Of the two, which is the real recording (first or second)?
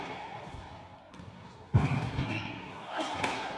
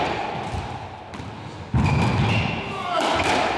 second